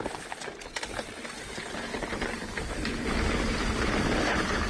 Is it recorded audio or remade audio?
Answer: recorded